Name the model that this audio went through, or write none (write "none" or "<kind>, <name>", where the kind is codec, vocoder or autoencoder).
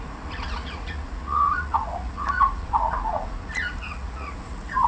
vocoder, Vocos